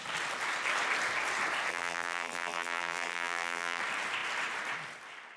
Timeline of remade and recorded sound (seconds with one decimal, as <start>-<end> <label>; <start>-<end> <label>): 0.0-1.7 recorded; 1.7-3.8 remade; 3.8-5.4 recorded

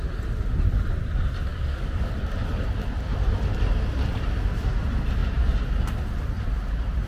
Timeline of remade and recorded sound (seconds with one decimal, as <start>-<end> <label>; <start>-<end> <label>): 0.0-1.5 recorded; 1.5-2.1 remade; 2.1-7.1 recorded